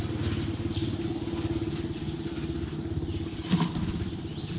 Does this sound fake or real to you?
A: real